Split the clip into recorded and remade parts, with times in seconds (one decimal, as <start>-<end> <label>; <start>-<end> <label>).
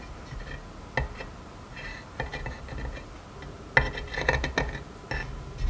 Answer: 0.0-1.7 recorded; 1.7-2.6 remade; 2.6-5.7 recorded